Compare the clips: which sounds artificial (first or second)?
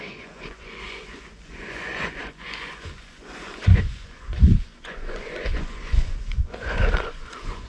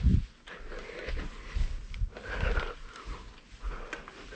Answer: first